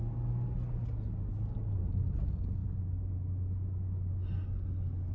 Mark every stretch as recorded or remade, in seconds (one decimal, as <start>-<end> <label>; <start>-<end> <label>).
0.0-5.1 recorded